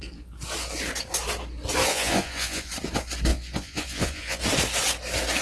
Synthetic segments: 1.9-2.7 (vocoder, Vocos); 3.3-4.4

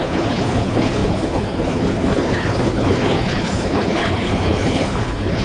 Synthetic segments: 0.0-5.4 (codec, HILCodec)

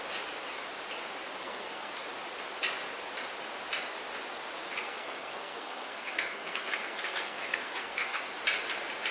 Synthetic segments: 1.4-1.9 (codec, SNAC); 4.8-8.2

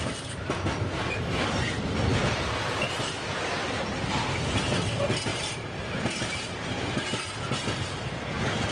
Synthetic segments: 5.3-6.8 (vocoder, BigVGAN v2)

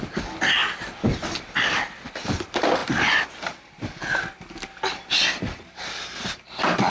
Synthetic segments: 0.6-2.1 (vocoder, BigVGAN v2); 2.8-6.9

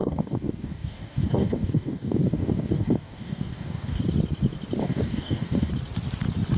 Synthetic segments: 0.0-4.0 (codec, DAC); 4.8-5.7

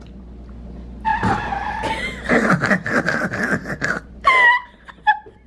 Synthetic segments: 1.1-4.1 (vocoder, BigVGAN v2); 4.6-5.5

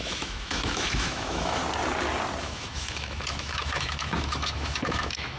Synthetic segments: 0.0-1.6 (autoencoder, DAC-VAE); 2.4-5.4